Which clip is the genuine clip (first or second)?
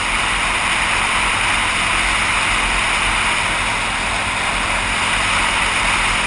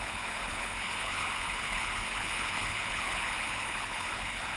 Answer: first